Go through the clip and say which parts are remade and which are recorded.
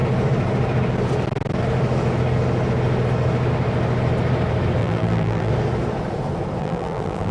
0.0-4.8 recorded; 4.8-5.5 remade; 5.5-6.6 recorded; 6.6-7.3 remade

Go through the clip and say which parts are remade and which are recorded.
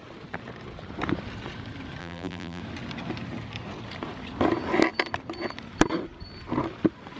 0.0-2.0 recorded; 2.0-2.6 remade; 2.6-7.2 recorded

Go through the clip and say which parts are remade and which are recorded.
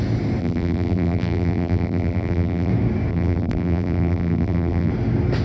0.0-0.4 recorded; 0.4-2.7 remade; 2.7-3.1 recorded; 3.1-4.9 remade; 4.9-5.4 recorded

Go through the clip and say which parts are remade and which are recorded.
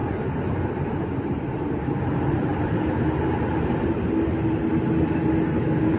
0.0-1.7 remade; 1.7-6.0 recorded